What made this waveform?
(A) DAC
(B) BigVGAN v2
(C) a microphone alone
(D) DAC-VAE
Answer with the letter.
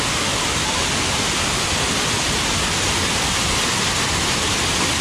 C